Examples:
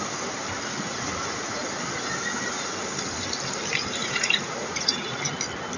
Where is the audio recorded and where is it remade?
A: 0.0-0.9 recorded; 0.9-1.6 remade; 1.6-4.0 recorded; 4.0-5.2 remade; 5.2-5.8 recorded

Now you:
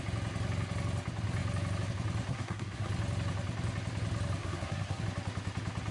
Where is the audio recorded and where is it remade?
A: 0.0-2.3 recorded; 2.3-2.9 remade; 2.9-4.4 recorded; 4.4-5.0 remade; 5.0-5.9 recorded

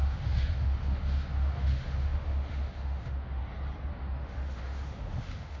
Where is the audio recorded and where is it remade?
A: 0.0-3.4 remade; 3.4-3.9 recorded; 3.9-5.6 remade

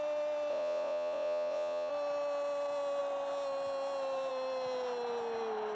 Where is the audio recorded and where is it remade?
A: 0.0-0.5 recorded; 0.5-1.9 remade; 1.9-5.7 recorded

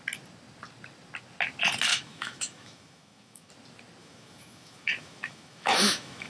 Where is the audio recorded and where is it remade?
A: 0.0-1.9 recorded; 1.9-3.5 remade; 3.5-4.0 recorded; 4.0-6.3 remade